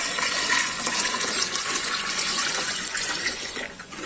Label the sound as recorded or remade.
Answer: remade